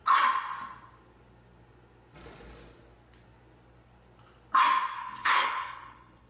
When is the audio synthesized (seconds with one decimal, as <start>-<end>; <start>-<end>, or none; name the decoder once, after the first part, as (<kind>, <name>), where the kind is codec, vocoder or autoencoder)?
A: 5.0-6.3 (codec, HILCodec)